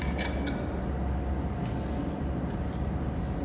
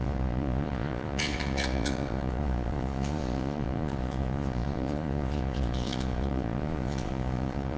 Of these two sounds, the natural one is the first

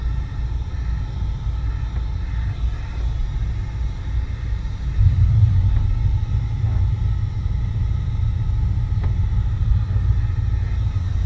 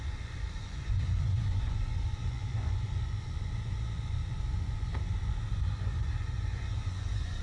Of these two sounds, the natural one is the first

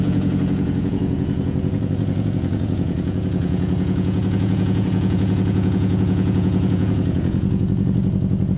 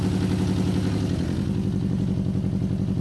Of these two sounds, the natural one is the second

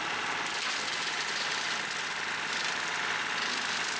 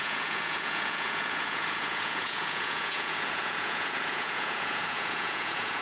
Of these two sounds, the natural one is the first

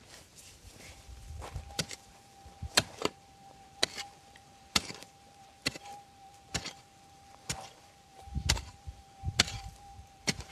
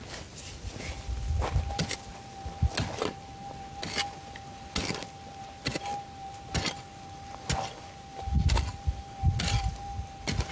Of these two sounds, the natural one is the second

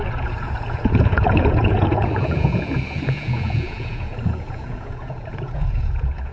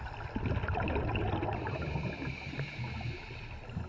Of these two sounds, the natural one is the second